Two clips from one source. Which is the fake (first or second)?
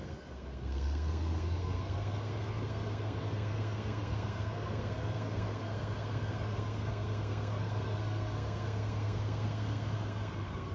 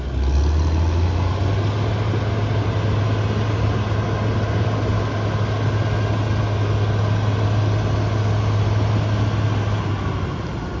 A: first